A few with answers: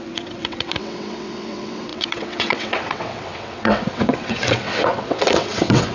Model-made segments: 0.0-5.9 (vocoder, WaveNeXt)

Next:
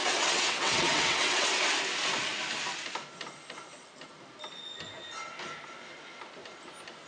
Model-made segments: 0.0-1.5 (vocoder, WaveNeXt)

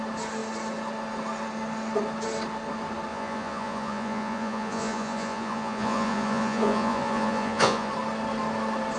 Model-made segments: 3.1-7.9 (vocoder, Vocos)

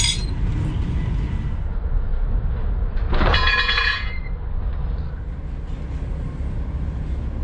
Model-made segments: 3.3-4.1 (vocoder, Vocos)

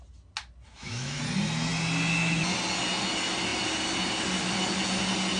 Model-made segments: 0.7-1.2 (autoencoder, DAC-VAE)